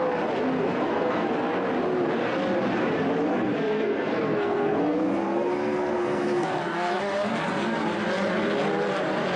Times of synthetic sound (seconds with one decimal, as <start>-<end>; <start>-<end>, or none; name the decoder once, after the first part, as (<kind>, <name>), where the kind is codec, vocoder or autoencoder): 0.6-1.3 (codec, SNAC); 3.3-7.0